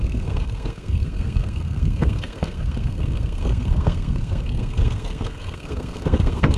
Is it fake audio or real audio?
fake